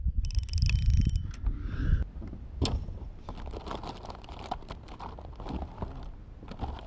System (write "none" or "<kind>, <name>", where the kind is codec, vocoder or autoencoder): none